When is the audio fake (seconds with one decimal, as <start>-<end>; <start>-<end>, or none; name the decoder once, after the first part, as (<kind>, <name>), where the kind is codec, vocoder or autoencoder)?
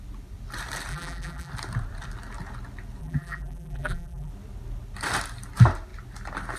0.9-1.5 (vocoder, BigVGAN v2); 3.0-4.3